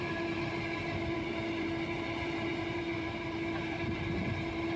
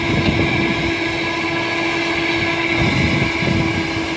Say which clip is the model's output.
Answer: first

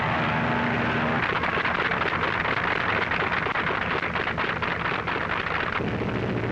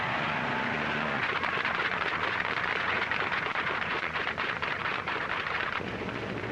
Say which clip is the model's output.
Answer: second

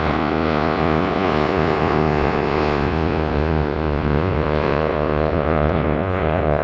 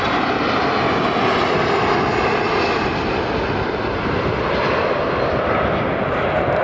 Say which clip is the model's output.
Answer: first